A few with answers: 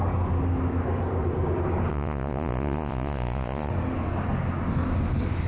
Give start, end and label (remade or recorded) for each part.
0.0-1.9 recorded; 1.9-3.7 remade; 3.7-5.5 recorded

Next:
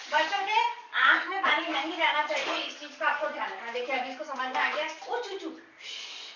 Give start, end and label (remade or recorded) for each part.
0.0-5.0 remade; 5.0-5.9 recorded; 5.9-6.4 remade